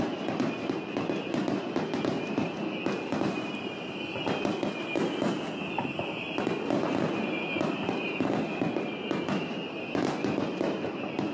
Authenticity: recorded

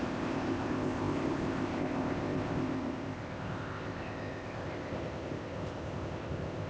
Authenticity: remade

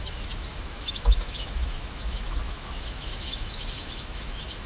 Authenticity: remade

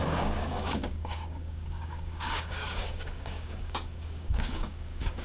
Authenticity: remade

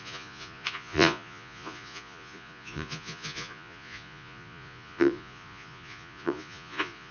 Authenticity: remade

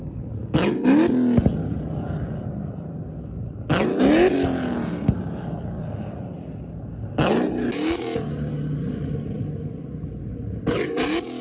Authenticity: recorded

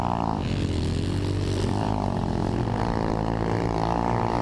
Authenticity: recorded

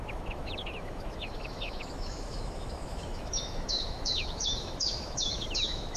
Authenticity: remade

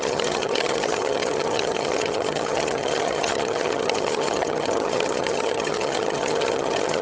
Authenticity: remade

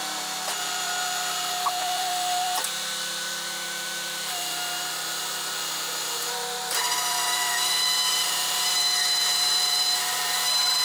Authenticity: remade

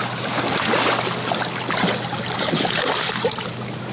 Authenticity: recorded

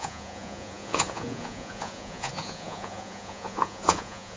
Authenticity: remade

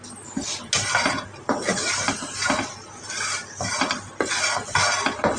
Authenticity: recorded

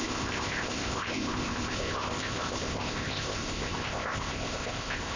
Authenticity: remade